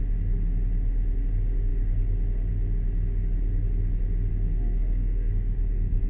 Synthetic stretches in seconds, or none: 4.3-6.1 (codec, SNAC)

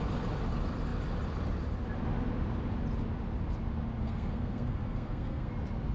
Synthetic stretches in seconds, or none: 4.0-5.5 (codec, SNAC)

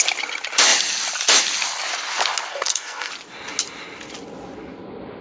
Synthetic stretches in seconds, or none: 2.5-3.1 (codec, SNAC)

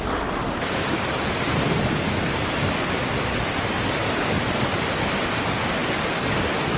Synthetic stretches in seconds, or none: none

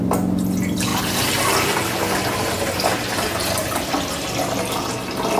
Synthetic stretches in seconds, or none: none

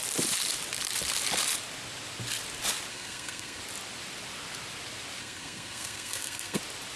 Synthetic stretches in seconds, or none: 2.9-3.6 (codec, SNAC); 5.2-6.6